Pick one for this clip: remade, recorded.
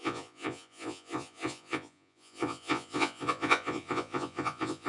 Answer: remade